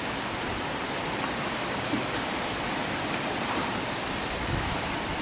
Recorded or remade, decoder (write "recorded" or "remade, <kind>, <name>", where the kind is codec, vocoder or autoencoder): remade, vocoder, BigVGAN v2